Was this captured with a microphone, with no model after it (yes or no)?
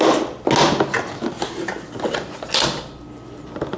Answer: yes